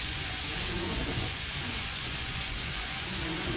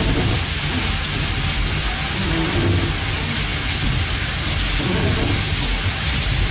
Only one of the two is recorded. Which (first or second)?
second